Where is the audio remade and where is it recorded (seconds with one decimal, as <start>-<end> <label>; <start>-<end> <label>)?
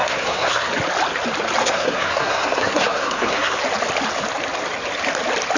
0.0-0.7 remade; 0.7-1.6 recorded; 1.6-3.6 remade; 3.6-5.6 recorded